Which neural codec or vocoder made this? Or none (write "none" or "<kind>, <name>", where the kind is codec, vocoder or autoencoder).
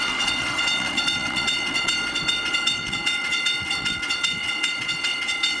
vocoder, WaveNeXt